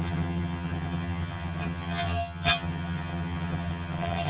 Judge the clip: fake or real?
fake